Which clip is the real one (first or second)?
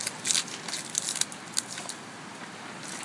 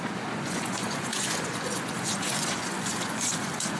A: first